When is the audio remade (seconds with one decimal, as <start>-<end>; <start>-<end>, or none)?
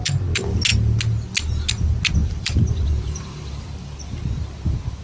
2.2-3.6